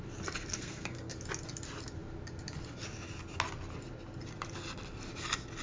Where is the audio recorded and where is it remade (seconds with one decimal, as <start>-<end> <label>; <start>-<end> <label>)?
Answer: 0.0-0.5 recorded; 0.5-1.1 remade; 1.1-5.6 recorded